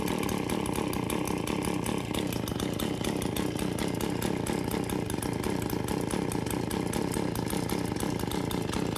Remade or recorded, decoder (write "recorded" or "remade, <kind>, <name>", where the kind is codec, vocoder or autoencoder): recorded